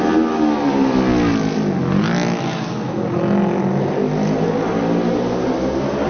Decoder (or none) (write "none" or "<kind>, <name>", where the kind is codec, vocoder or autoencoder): none